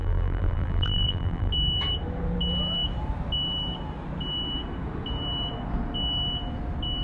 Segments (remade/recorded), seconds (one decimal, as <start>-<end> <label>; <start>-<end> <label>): 0.0-1.5 remade; 1.5-7.0 recorded